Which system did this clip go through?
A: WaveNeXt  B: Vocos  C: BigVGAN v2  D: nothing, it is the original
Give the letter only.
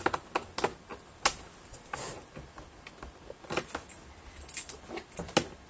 D